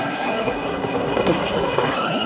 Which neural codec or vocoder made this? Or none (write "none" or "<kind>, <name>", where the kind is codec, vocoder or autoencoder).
codec, SNAC